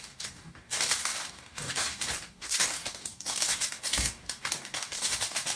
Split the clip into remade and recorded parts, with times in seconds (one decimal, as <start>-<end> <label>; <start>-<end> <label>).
0.0-5.6 remade

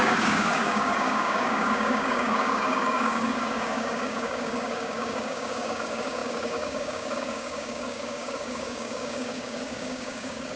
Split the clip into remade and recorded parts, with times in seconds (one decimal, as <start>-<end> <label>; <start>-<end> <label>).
0.0-10.6 remade

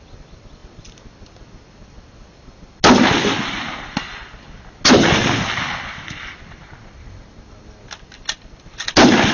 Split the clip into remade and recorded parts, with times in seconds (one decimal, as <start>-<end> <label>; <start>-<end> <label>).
0.0-9.3 recorded